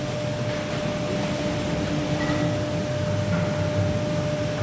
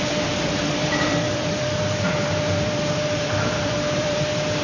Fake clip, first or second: second